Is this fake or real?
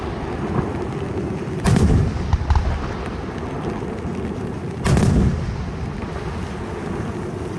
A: real